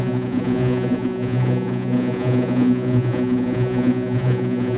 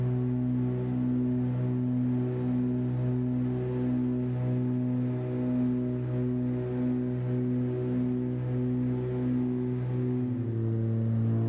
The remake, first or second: first